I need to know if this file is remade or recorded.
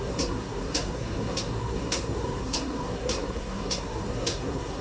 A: remade